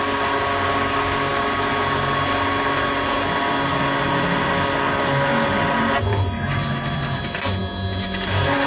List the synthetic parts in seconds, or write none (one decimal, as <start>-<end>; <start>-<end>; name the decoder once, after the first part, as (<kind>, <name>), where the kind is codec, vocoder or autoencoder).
none